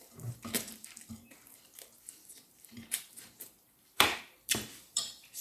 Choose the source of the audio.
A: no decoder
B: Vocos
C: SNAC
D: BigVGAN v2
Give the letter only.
D